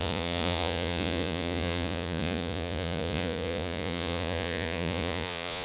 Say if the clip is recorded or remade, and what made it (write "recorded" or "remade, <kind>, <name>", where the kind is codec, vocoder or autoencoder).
remade, vocoder, Vocos